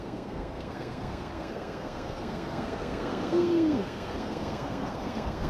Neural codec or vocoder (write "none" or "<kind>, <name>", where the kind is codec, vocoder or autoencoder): codec, SNAC